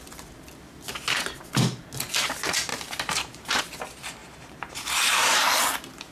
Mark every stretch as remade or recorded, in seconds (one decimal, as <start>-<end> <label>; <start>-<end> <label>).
0.0-2.7 recorded; 2.7-3.6 remade; 3.6-4.2 recorded; 4.2-5.6 remade; 5.6-6.1 recorded